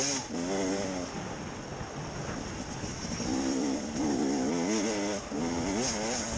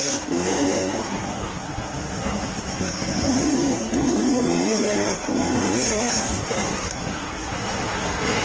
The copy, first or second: second